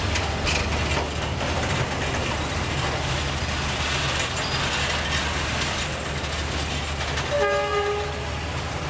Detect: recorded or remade recorded